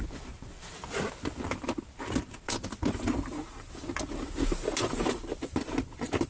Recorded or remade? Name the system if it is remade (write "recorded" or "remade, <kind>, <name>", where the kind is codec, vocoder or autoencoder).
recorded